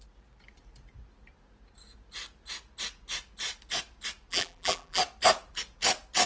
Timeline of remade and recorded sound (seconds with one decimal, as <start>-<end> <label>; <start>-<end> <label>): 0.0-4.3 recorded; 4.3-5.0 remade; 5.0-6.3 recorded